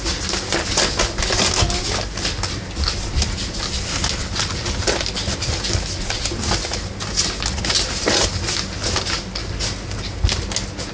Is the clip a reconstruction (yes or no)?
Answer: no